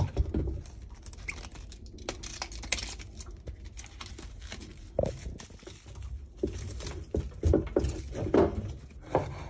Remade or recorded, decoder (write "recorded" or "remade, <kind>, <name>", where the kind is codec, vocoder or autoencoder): recorded